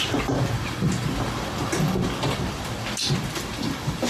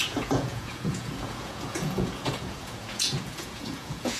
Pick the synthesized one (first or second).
second